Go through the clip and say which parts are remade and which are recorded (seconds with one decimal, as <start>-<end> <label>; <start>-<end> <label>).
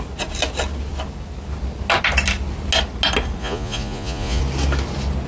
0.0-3.4 recorded; 3.4-4.4 remade; 4.4-5.3 recorded